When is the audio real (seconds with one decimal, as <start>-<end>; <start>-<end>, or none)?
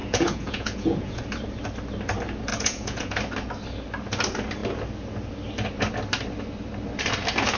1.2-2.5; 3.2-7.6